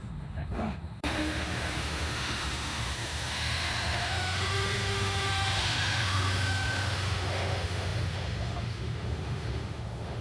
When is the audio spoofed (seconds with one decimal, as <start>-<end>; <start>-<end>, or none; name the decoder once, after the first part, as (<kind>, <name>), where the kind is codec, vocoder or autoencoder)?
0.0-10.2 (autoencoder, DAC-VAE)